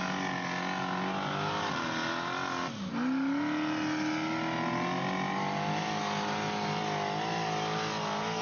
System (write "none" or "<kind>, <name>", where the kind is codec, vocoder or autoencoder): none